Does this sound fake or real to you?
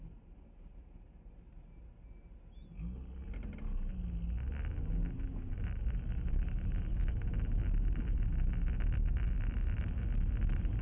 real